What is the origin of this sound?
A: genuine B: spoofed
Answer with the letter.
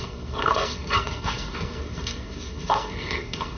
B